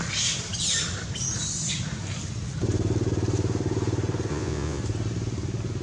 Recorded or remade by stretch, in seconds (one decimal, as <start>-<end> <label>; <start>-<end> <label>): 0.0-4.3 recorded; 4.3-4.8 remade; 4.8-5.8 recorded